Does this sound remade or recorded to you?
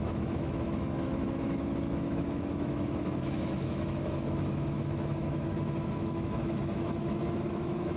remade